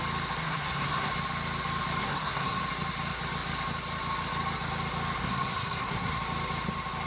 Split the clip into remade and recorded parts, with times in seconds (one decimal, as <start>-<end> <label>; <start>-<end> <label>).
0.0-0.4 recorded; 0.4-1.1 remade; 1.1-2.0 recorded; 2.0-2.6 remade; 2.6-5.2 recorded; 5.2-6.2 remade; 6.2-7.1 recorded